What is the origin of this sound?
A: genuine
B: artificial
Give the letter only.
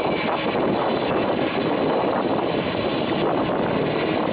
A